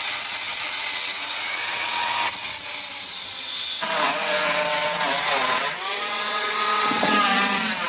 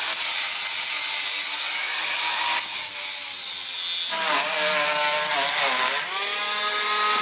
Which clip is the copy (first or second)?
first